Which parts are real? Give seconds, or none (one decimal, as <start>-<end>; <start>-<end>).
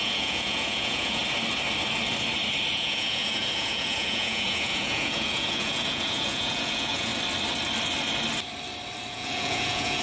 1.2-2.7; 7.1-9.1